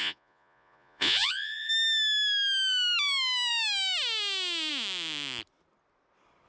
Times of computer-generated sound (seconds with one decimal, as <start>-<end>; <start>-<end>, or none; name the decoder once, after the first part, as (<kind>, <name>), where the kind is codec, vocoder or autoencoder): 0.0-1.7 (vocoder, Vocos)